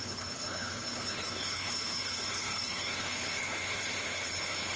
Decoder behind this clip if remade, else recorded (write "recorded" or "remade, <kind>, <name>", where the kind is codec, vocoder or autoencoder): remade, codec, HILCodec